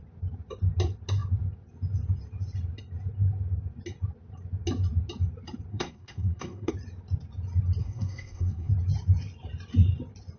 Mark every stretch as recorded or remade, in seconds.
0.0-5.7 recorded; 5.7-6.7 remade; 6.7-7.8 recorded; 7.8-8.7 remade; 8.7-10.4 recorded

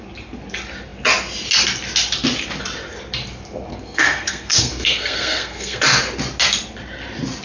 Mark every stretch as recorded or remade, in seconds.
0.0-3.7 recorded; 3.7-5.8 remade; 5.8-7.4 recorded

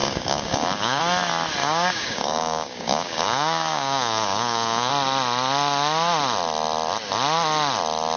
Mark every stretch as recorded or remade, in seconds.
0.0-1.0 remade; 1.0-1.6 recorded; 1.6-4.9 remade; 4.9-8.2 recorded

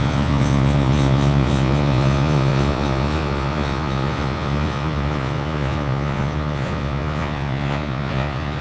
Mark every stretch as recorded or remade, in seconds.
0.0-8.6 remade

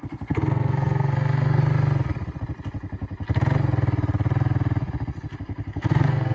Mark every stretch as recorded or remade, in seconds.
0.0-1.6 remade; 1.6-5.4 recorded; 5.4-6.3 remade